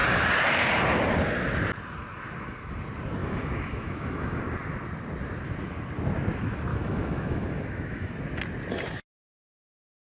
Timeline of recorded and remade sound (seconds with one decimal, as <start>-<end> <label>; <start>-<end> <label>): 0.0-3.2 recorded; 3.2-4.4 remade; 4.4-6.7 recorded; 6.7-8.1 remade; 8.1-10.1 recorded